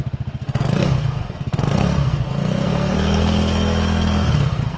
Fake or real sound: fake